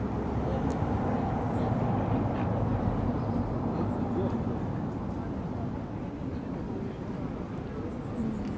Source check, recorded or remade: recorded